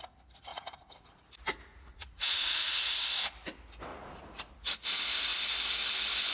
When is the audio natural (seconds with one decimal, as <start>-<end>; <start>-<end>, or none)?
0.0-0.5; 1.2-1.7; 2.7-3.9; 4.5-6.3